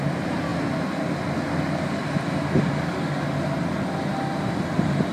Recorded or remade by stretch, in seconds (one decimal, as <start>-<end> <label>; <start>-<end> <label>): 0.0-5.1 recorded